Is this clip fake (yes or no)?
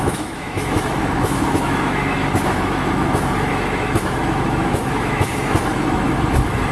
yes